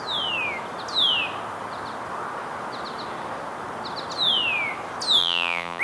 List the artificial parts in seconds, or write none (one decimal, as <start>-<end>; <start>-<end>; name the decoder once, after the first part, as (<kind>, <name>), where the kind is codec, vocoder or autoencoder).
5.2-5.8 (vocoder, BigVGAN v2)